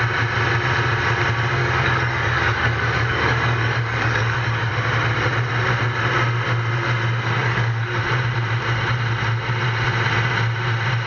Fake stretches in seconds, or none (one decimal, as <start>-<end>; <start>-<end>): 1.6-4.7; 7.4-8.0